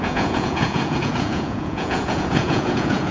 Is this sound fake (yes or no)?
yes